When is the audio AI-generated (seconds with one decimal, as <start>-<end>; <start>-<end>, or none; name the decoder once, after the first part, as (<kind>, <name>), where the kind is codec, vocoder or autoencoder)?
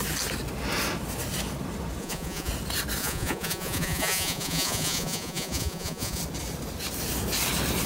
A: 2.0-2.5 (vocoder, Vocos); 3.0-6.2